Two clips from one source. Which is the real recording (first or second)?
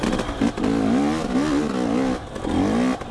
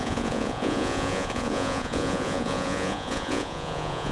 first